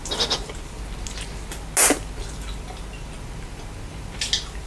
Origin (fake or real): real